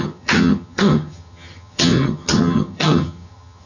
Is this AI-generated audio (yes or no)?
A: yes